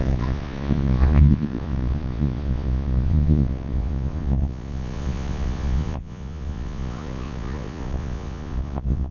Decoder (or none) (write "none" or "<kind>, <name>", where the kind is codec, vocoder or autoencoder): vocoder, Vocos